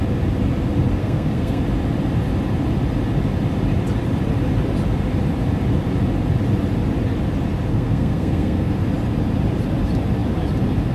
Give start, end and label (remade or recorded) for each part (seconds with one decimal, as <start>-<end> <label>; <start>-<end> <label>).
0.0-1.0 recorded; 1.0-1.6 remade; 1.6-7.7 recorded; 7.7-8.7 remade; 8.7-10.9 recorded